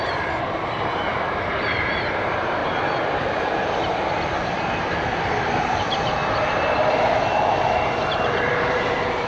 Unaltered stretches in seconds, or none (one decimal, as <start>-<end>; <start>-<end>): 6.1-6.7

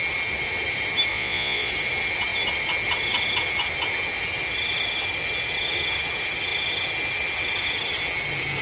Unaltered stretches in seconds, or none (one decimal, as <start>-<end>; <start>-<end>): 0.0-1.1; 1.7-8.6

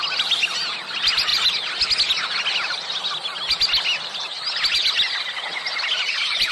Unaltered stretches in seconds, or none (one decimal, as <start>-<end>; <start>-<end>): 0.0-6.5

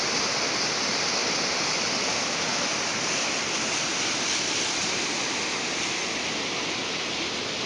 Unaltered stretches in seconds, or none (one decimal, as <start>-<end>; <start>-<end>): 0.0-7.7